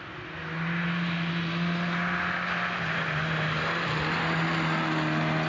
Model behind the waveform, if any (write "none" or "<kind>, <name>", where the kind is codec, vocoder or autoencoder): none